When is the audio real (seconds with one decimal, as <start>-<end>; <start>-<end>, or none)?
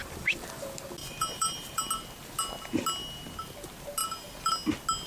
0.0-1.0; 1.9-4.0; 4.5-5.1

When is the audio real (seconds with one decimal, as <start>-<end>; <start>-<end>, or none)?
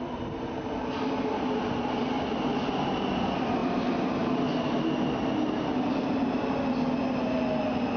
0.0-8.0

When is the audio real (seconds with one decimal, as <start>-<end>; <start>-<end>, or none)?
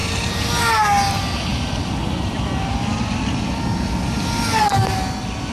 0.0-5.5